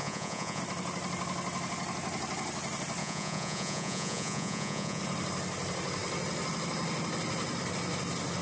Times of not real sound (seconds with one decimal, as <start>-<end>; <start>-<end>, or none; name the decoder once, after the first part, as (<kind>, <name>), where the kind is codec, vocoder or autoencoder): 0.0-0.6 (vocoder, Vocos); 3.0-5.0